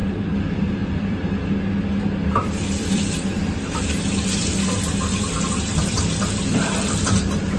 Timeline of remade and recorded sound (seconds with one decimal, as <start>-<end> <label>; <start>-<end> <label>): 0.0-1.5 remade; 1.5-2.2 recorded; 2.2-6.8 remade; 6.8-7.6 recorded